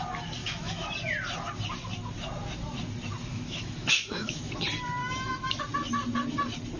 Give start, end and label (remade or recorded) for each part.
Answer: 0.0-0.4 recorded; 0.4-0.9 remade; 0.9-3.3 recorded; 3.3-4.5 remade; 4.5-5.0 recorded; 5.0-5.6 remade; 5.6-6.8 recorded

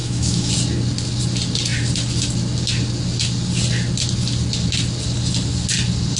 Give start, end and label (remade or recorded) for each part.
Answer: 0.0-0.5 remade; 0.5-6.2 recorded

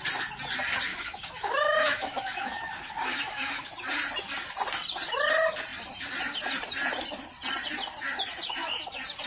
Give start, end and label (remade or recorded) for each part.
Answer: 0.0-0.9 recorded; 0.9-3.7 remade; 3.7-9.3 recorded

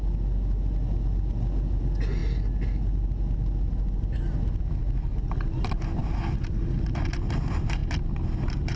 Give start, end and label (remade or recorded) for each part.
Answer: 0.0-8.8 recorded